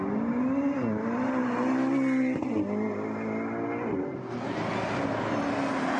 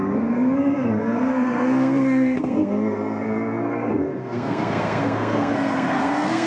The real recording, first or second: first